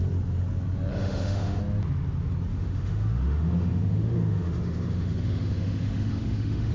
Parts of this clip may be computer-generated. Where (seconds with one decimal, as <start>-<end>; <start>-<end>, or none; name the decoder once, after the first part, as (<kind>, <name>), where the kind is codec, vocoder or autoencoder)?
0.9-1.6 (autoencoder, DAC-VAE); 2.5-6.7